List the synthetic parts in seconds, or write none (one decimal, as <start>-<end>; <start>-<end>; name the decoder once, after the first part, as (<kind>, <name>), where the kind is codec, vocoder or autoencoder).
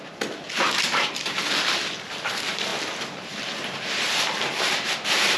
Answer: 0.0-1.4 (vocoder, BigVGAN v2); 2.1-5.4